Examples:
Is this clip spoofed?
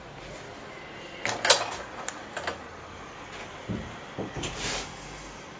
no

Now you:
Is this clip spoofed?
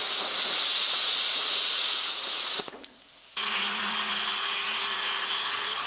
yes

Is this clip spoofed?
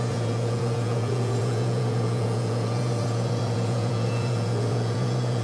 yes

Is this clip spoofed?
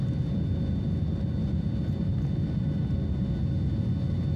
no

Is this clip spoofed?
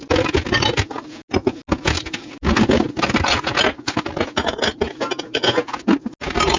no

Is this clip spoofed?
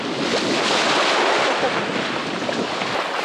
no